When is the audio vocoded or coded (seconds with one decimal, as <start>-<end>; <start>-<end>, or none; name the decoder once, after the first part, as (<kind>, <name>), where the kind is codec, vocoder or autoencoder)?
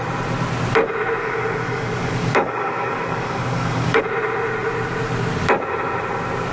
1.2-4.0 (codec, DAC)